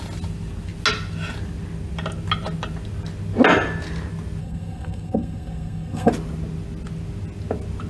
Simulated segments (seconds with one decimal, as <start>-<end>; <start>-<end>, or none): 4.4-6.1